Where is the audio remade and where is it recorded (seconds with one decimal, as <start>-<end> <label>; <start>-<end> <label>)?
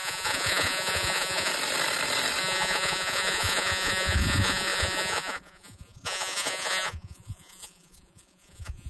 0.0-1.5 remade; 1.5-2.4 recorded; 2.4-8.9 remade